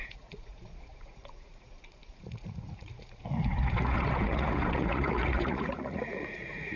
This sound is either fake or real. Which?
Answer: fake